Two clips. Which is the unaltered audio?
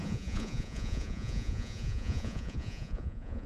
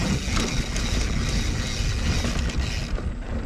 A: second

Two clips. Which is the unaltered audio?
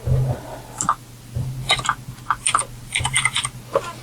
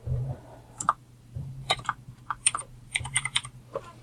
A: first